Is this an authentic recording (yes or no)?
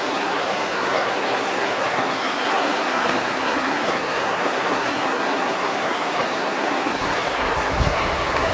no